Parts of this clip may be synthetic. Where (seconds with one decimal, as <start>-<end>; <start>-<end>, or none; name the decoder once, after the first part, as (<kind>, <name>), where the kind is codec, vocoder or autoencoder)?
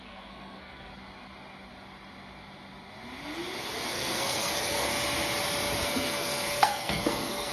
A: 0.0-0.9 (codec, SNAC); 3.9-4.9; 5.8-7.5